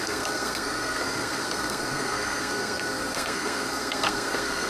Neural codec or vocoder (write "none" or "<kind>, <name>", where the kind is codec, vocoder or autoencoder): codec, SNAC